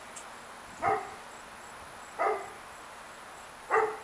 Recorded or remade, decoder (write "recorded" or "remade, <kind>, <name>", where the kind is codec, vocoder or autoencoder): recorded